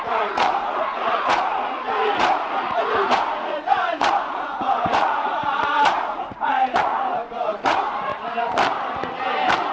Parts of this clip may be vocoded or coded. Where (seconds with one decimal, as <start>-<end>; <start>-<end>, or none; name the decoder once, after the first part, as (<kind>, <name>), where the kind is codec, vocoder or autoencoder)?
0.0-8.1 (vocoder, Vocos)